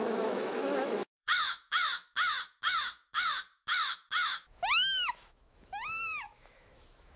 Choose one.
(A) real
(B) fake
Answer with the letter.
B